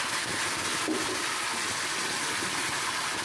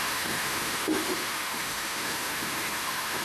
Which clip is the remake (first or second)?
second